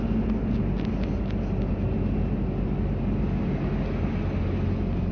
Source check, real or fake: real